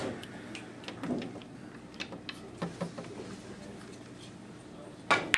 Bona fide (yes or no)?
yes